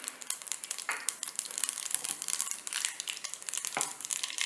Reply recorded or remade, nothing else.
remade